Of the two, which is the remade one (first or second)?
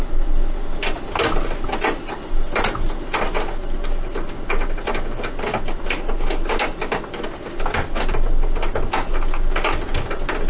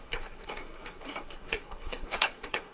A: second